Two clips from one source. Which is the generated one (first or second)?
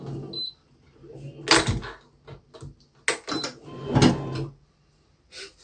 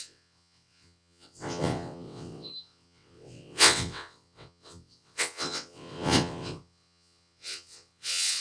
second